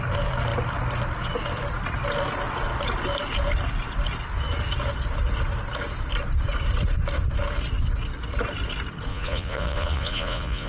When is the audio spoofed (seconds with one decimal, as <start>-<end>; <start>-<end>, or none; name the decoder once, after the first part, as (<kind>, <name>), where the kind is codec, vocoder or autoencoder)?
9.1-10.7 (vocoder, Vocos)